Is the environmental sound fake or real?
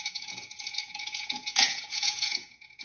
fake